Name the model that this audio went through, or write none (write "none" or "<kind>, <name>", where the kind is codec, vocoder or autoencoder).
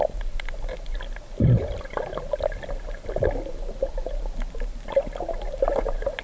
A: none